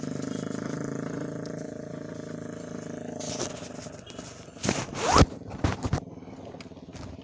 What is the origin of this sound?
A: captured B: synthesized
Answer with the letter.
A